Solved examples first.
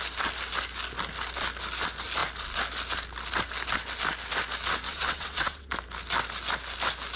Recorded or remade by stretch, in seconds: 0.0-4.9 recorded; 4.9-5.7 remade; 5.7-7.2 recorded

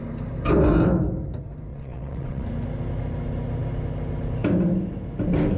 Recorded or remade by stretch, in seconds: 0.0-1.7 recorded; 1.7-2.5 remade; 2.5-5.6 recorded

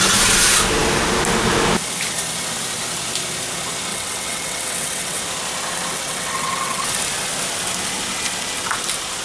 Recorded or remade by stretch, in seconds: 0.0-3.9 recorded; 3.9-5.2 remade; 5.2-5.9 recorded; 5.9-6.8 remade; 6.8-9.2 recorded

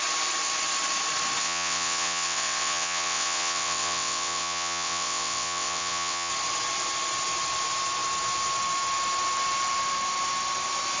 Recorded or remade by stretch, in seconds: 0.0-1.4 recorded; 1.4-6.3 remade; 6.3-11.0 recorded

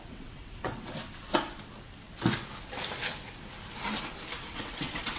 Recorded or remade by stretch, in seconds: 0.0-1.3 remade; 1.3-4.4 recorded; 4.4-5.2 remade

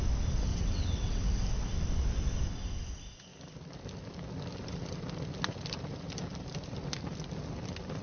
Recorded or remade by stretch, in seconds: 0.0-0.5 recorded; 0.5-1.3 remade; 1.3-8.0 recorded

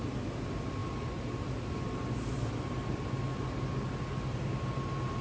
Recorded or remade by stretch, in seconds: 0.0-5.2 recorded

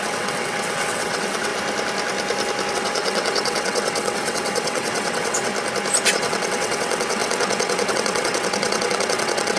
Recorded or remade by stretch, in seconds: 0.0-1.5 remade; 1.5-2.7 recorded; 2.7-5.5 remade; 5.5-6.1 recorded; 6.1-9.6 remade